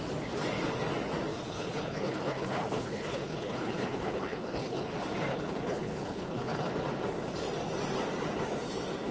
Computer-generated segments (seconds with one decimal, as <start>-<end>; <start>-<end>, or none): 1.3-4.8; 5.3-6.7